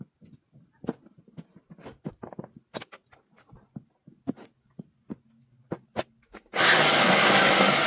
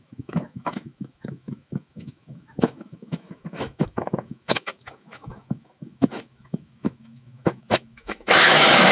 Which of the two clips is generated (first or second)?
second